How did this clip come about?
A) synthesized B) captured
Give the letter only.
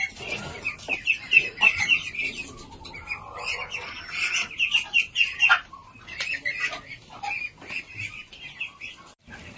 B